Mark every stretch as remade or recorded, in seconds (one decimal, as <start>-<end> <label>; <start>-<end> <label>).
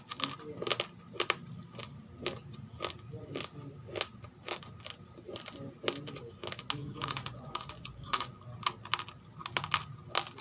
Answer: 0.0-6.8 recorded; 6.8-8.4 remade; 8.4-10.4 recorded